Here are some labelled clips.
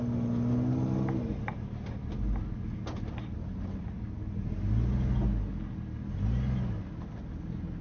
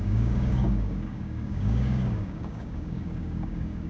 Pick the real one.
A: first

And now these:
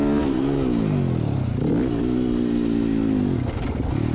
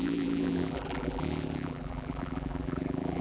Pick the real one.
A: first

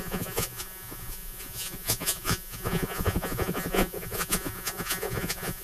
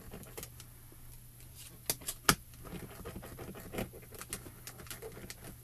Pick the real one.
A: second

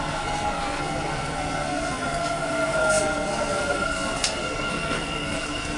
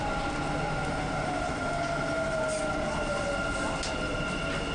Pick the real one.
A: second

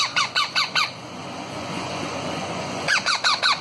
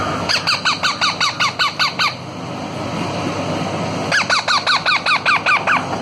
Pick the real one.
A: second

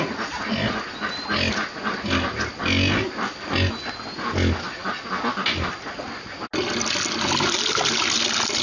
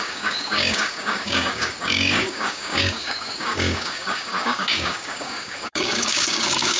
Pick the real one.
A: first